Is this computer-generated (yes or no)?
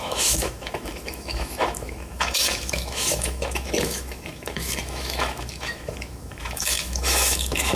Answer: yes